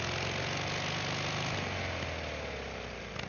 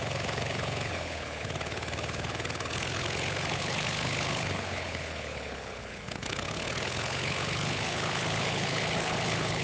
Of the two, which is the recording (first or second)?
first